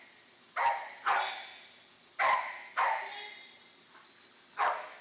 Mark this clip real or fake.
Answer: real